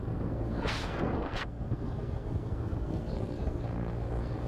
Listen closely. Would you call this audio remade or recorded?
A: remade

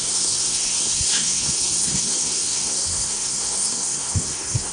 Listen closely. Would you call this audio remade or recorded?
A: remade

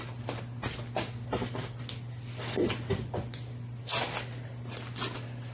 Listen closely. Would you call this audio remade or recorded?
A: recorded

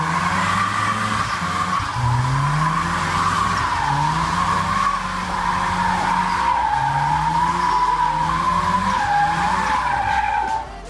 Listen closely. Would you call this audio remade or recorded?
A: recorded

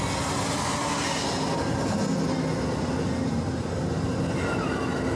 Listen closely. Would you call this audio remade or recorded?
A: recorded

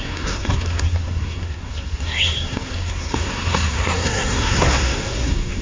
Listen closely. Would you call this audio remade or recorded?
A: remade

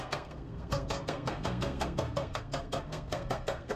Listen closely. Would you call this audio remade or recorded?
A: remade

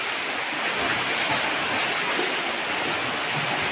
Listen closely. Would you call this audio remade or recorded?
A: recorded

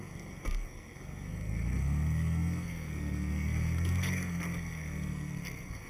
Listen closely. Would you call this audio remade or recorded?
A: remade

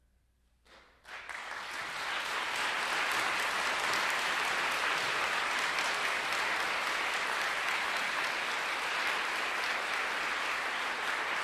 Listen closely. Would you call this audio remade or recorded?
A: recorded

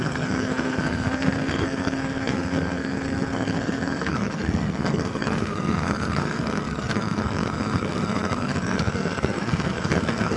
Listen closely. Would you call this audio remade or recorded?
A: remade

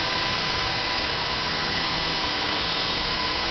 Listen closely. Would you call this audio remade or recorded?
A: remade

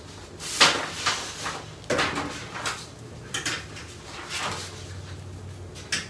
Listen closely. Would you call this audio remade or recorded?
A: recorded